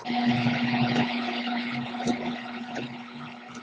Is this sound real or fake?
fake